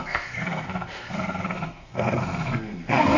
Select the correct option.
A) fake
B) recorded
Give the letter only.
A